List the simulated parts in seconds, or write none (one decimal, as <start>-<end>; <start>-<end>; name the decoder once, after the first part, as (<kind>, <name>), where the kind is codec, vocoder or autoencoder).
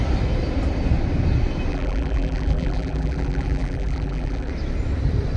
1.7-4.5 (vocoder, BigVGAN v2)